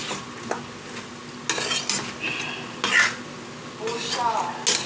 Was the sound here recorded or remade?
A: recorded